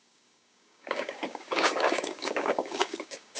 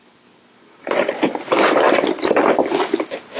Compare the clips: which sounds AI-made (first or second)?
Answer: first